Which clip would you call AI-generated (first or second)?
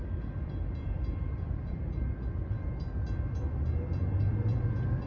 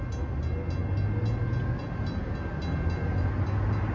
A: first